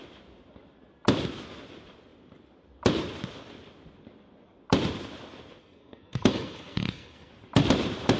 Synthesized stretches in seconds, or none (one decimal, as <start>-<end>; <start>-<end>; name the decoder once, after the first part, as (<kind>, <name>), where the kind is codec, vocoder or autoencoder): 5.6-7.3 (codec, SNAC)